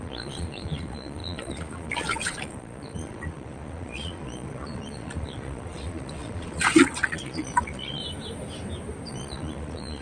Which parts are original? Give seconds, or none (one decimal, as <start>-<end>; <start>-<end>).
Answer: 8.0-9.1